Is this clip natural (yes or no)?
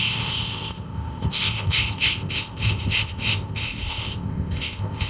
no